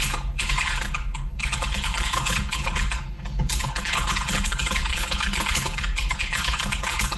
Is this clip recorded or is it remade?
remade